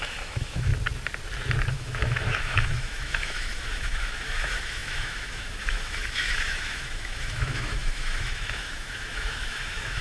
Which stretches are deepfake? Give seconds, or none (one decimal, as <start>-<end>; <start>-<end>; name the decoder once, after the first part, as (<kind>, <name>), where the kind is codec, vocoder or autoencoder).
0.0-0.7 (autoencoder, DAC-VAE); 1.7-10.0